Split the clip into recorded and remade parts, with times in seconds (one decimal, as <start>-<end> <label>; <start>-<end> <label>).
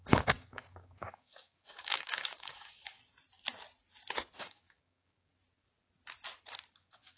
0.0-3.0 remade; 3.0-4.4 recorded; 4.4-5.3 remade; 5.3-6.7 recorded; 6.7-7.2 remade